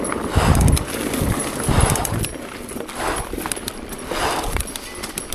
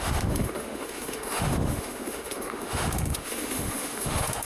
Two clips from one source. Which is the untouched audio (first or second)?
first